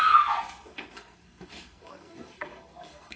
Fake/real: fake